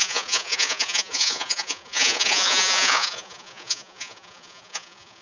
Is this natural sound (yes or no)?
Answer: no